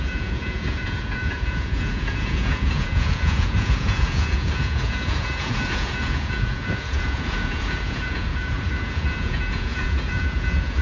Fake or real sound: fake